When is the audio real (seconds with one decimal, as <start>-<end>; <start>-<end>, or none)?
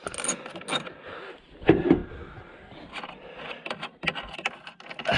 0.0-5.2